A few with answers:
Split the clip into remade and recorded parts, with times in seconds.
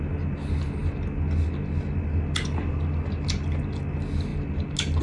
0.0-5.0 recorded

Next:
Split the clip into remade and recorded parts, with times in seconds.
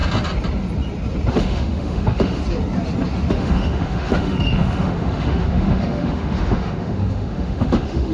0.0-1.3 recorded; 1.3-2.4 remade; 2.4-3.3 recorded; 3.3-8.1 remade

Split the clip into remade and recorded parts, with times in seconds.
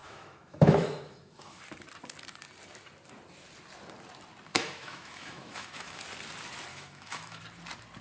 0.0-1.6 remade; 1.6-4.5 recorded; 4.5-6.0 remade; 6.0-6.7 recorded; 6.7-7.4 remade; 7.4-8.0 recorded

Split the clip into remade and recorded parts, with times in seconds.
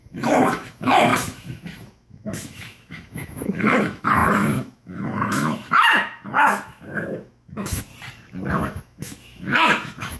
0.0-7.9 remade; 7.9-8.5 recorded; 8.5-10.2 remade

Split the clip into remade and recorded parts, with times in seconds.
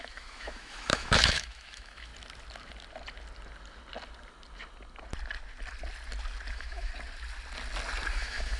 0.0-2.1 remade; 2.1-6.5 recorded; 6.5-6.9 remade; 6.9-8.1 recorded; 8.1-8.6 remade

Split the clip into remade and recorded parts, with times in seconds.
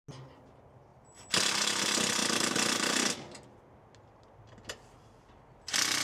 0.0-6.0 recorded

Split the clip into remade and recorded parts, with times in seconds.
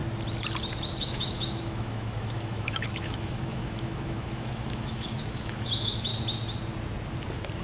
0.0-1.0 recorded; 1.0-6.1 remade; 6.1-7.6 recorded